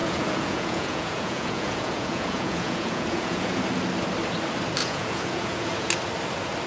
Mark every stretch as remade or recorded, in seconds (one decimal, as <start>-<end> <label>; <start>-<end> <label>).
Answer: 0.0-3.6 remade; 3.6-4.8 recorded; 4.8-5.9 remade; 5.9-6.7 recorded